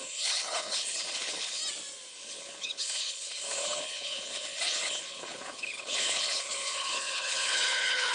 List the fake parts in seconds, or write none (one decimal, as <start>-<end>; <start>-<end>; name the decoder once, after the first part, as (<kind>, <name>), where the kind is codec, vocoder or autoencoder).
0.0-1.6 (codec, HILCodec); 2.1-8.1